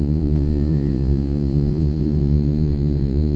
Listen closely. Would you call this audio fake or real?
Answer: fake